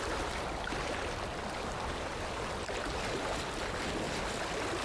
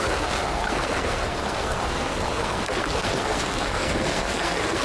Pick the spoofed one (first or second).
second